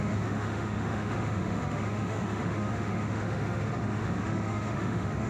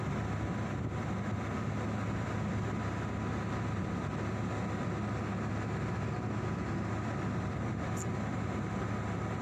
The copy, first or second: first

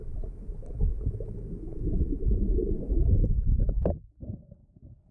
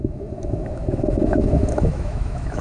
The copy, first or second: second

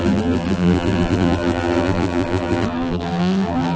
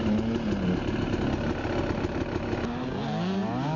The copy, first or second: first